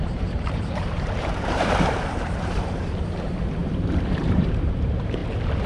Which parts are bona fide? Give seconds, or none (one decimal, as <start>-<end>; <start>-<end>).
5.2-5.7